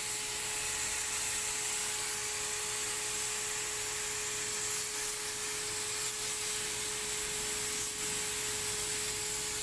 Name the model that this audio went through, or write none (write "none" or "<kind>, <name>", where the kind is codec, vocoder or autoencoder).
none